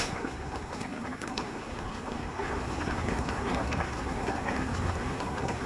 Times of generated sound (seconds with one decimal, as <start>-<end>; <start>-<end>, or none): 0.0-5.7